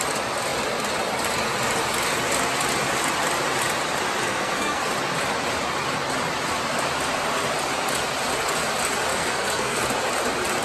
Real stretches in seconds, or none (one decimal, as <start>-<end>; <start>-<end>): 0.0-4.2; 4.9-9.1; 9.8-10.6